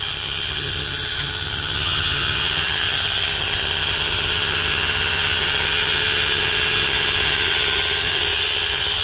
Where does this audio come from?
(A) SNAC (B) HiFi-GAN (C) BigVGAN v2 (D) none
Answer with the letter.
B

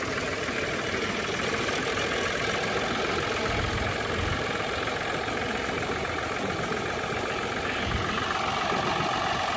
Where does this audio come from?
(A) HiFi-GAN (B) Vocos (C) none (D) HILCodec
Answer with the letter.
C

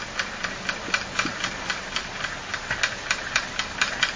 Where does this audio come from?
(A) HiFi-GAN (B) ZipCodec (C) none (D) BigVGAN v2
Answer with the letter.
C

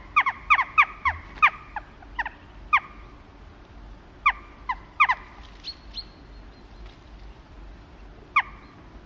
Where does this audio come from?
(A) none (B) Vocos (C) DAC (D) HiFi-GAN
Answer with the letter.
A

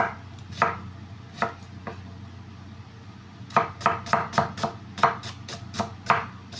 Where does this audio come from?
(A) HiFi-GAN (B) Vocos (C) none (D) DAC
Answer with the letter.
C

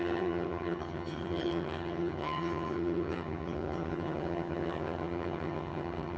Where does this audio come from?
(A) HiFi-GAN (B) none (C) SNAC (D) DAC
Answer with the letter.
A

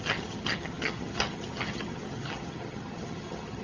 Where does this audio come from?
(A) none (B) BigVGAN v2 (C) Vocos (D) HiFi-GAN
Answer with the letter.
D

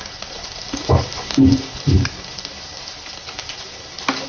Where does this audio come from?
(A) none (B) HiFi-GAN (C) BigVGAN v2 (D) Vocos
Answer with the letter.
A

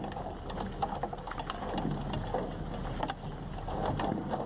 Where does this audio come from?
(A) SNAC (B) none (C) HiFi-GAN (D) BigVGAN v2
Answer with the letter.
B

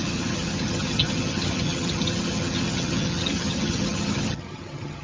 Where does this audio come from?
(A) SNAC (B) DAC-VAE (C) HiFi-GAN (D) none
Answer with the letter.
C